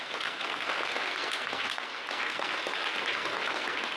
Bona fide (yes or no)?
no